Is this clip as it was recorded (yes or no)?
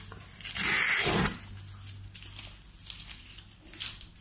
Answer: yes